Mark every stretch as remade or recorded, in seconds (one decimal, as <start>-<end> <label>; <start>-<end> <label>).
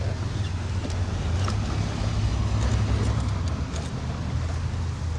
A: 0.0-5.2 recorded